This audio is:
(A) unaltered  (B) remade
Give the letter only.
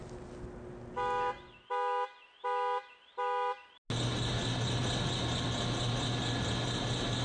A